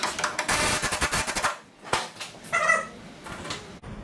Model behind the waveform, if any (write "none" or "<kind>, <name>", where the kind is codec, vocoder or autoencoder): none